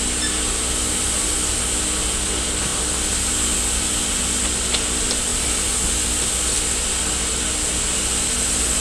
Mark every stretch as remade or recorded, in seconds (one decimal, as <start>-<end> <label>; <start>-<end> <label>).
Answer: 0.0-8.8 recorded